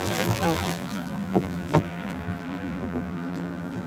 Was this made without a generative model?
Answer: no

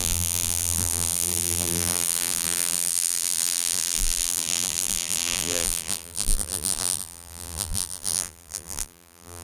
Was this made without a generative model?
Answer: no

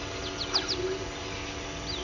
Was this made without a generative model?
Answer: yes